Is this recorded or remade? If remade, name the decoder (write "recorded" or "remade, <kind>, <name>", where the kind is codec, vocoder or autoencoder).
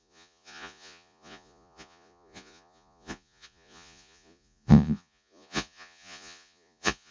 remade, vocoder, Vocos